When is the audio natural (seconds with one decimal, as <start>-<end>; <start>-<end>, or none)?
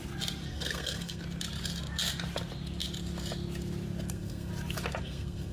0.0-0.5; 1.2-4.1; 4.5-5.0